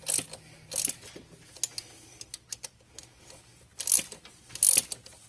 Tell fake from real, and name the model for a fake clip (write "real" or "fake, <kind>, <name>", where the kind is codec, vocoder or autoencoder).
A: real